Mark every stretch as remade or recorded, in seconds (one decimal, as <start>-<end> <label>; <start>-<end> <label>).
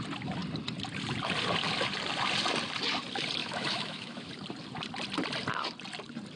0.0-3.4 recorded; 3.4-4.3 remade; 4.3-6.4 recorded